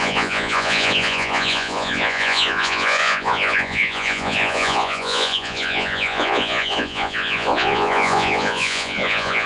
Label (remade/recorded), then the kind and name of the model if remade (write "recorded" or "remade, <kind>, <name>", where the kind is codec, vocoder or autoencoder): remade, vocoder, Vocos